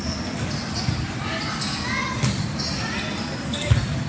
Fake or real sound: real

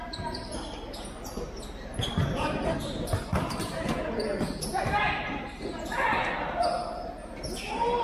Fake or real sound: fake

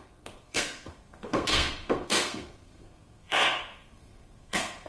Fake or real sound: fake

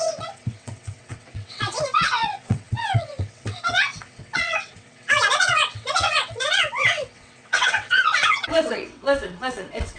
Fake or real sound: fake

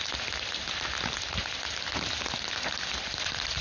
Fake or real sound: real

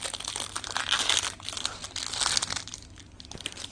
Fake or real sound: real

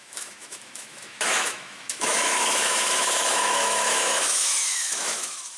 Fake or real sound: fake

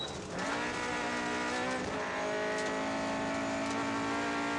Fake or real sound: real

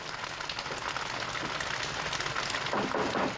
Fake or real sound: real